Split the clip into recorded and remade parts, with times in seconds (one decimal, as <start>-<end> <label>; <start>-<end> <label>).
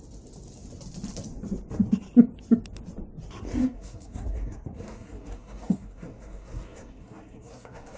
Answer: 0.0-3.6 recorded; 3.6-8.0 remade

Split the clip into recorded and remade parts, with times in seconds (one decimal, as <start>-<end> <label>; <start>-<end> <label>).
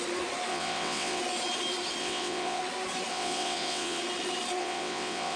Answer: 0.0-0.5 recorded; 0.5-1.2 remade; 1.2-2.0 recorded; 2.0-2.6 remade; 2.6-3.1 recorded; 3.1-4.0 remade; 4.0-4.6 recorded; 4.6-5.4 remade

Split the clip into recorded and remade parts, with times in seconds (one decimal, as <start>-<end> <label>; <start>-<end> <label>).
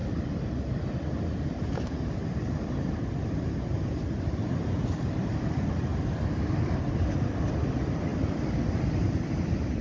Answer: 0.0-9.8 recorded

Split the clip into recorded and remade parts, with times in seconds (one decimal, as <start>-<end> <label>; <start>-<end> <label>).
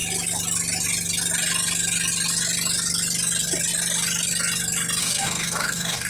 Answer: 0.0-5.0 recorded; 5.0-6.1 remade